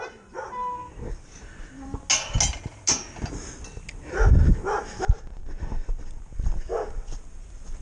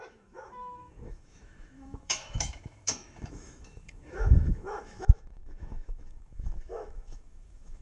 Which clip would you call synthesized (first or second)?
second